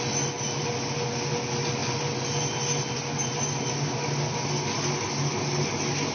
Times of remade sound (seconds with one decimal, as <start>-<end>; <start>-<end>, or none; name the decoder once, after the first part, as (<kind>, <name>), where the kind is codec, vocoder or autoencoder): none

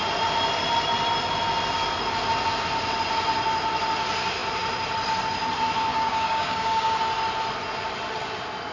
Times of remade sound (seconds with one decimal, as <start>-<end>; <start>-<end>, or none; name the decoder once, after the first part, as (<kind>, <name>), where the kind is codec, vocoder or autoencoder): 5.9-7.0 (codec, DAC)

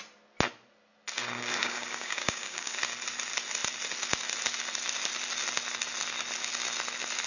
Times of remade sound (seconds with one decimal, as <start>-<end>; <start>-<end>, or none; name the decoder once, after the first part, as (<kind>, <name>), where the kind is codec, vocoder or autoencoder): 1.6-2.8 (codec, DAC)

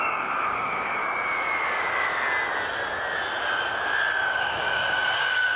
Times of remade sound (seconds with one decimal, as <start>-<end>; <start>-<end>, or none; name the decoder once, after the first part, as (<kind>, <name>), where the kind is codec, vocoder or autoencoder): 0.0-1.0 (codec, DAC); 4.4-5.6

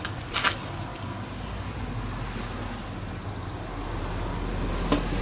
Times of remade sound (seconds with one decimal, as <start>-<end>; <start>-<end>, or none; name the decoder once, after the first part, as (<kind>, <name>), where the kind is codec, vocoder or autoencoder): none

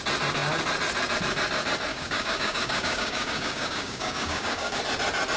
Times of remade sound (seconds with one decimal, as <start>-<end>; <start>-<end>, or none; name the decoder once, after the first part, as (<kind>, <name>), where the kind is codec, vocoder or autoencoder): 1.9-4.8 (codec, DAC)

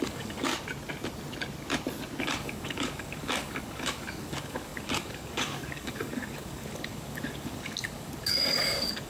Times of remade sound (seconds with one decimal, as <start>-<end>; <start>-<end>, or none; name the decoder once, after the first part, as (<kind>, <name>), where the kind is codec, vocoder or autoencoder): 0.0-0.5 (codec, DAC); 2.2-9.1